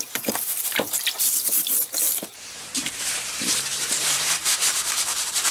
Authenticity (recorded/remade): remade